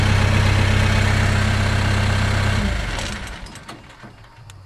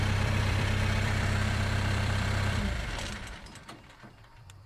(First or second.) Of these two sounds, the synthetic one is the second